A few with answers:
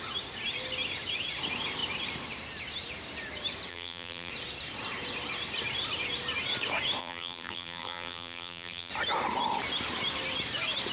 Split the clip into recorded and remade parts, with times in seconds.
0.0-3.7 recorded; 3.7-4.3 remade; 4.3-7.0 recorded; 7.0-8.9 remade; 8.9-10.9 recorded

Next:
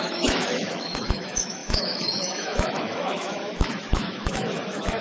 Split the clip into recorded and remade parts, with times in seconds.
0.0-5.0 remade

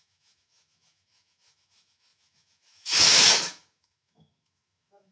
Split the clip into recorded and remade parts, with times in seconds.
0.0-5.1 remade

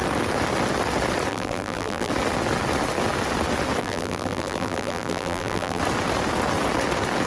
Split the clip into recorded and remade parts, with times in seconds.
0.0-1.3 recorded; 1.3-2.1 remade; 2.1-3.8 recorded; 3.8-5.8 remade; 5.8-7.3 recorded

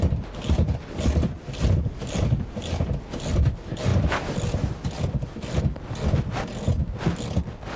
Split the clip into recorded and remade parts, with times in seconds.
0.0-7.8 recorded

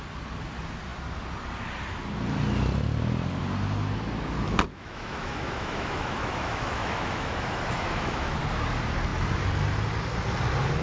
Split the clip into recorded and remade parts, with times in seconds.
0.0-4.7 recorded; 4.7-8.4 remade; 8.4-10.8 recorded